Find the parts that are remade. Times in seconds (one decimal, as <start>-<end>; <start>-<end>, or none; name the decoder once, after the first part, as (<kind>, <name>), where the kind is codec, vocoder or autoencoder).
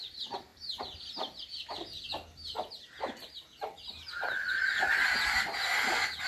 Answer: none